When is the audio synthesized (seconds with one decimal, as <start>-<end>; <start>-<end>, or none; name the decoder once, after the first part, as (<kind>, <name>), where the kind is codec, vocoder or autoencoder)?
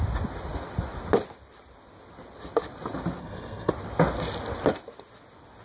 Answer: 3.2-3.7 (codec, SNAC)